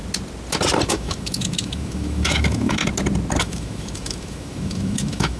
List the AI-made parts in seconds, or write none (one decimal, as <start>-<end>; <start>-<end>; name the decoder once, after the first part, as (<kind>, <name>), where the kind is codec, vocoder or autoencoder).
0.9-2.8 (autoencoder, DAC-VAE); 3.4-5.4